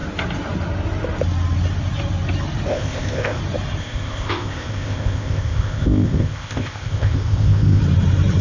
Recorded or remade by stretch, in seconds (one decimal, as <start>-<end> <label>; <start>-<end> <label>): 0.0-2.7 recorded; 2.7-3.4 remade; 3.4-3.8 recorded; 3.8-7.8 remade; 7.8-8.4 recorded